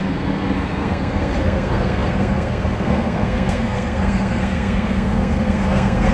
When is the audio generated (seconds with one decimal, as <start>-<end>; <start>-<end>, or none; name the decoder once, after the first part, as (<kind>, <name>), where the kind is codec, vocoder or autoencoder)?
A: 0.0-6.1 (codec, SNAC)